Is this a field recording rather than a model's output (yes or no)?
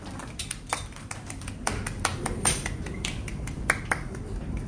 no